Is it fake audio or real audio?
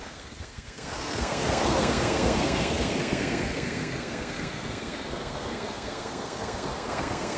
fake